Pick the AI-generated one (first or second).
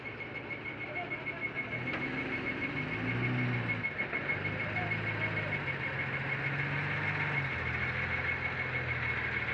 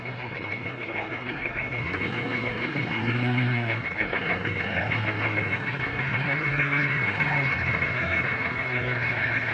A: second